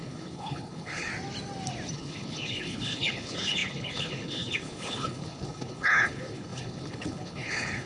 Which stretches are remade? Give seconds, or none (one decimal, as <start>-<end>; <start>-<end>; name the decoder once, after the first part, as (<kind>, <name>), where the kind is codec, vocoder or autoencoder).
0.0-1.1 (codec, HILCodec); 1.9-7.9